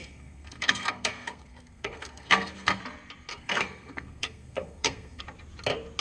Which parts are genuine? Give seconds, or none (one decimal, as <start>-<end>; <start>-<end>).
2.8-3.3; 5.2-6.0

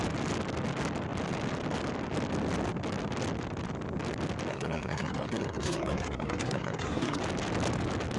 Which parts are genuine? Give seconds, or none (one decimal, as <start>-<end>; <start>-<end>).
0.0-4.5; 7.2-8.2

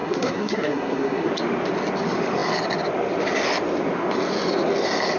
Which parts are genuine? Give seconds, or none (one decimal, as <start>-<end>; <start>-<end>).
1.3-5.2

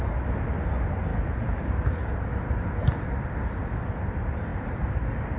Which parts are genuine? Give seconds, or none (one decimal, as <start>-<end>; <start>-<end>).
0.0-5.4